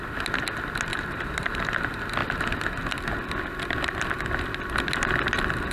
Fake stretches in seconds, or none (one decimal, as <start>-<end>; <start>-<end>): 0.9-1.6